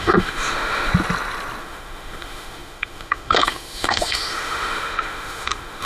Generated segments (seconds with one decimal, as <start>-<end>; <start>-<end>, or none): 0.0-0.9; 1.6-5.9